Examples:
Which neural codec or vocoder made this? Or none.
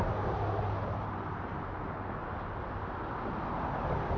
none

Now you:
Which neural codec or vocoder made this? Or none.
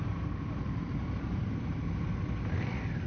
none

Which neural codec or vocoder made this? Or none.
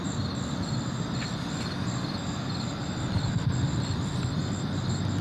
none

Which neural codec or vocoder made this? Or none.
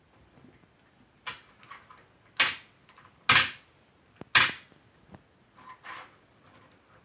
none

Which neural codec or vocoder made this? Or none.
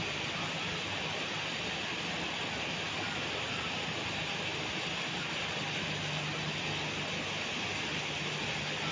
none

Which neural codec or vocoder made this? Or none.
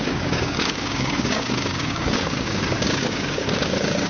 codec, DAC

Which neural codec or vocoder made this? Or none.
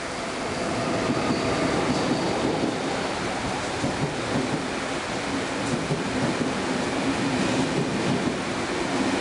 none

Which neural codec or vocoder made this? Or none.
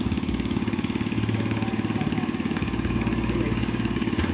codec, DAC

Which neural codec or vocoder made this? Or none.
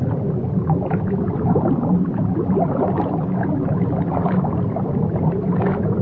none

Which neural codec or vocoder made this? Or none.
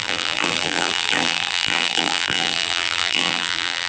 vocoder, BigVGAN v2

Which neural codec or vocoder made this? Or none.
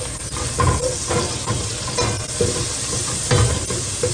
none